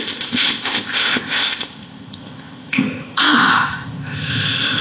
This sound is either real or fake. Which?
fake